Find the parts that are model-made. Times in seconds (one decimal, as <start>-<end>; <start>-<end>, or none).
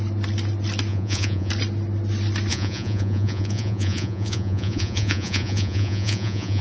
0.9-1.5; 2.5-6.6